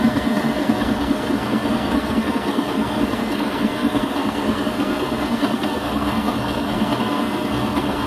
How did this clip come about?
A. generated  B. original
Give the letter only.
A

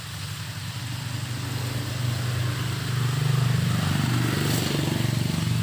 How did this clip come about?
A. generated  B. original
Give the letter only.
B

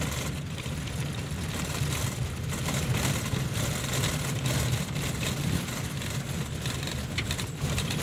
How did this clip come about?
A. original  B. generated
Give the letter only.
B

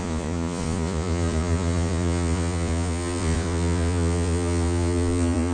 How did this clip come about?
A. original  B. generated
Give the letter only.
B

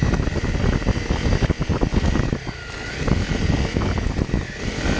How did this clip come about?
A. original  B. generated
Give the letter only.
A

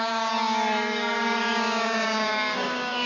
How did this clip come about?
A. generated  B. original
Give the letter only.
A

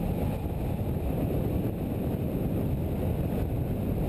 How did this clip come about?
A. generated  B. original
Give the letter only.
A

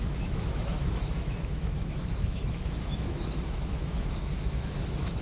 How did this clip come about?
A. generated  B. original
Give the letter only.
A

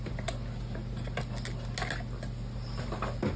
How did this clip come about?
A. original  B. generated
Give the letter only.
A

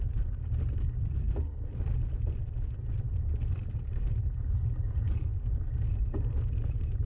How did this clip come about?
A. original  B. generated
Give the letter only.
A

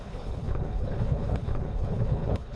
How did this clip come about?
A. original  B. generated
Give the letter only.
B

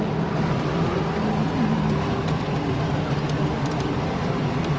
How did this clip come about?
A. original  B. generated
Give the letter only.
B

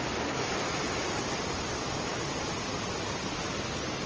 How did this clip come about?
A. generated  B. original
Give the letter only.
B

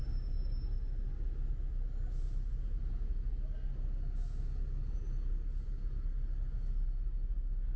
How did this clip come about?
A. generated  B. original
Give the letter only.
B